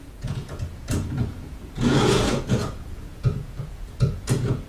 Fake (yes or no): yes